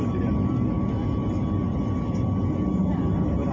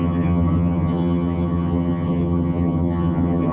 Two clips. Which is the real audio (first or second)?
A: first